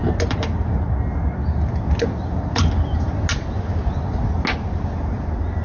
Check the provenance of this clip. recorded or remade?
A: recorded